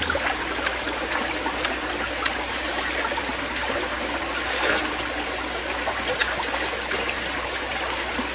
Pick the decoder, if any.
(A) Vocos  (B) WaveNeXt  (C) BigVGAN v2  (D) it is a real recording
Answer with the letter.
D